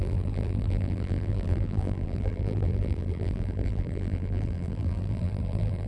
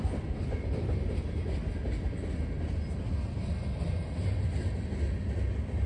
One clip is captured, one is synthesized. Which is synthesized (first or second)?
first